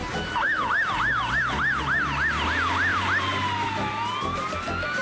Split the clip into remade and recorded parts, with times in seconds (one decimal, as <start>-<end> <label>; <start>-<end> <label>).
0.0-5.0 recorded